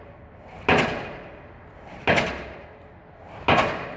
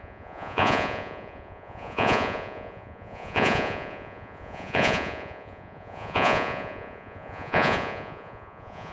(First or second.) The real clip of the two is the first